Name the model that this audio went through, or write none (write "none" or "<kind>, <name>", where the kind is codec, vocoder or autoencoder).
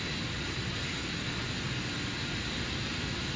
none